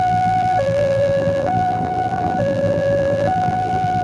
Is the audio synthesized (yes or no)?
yes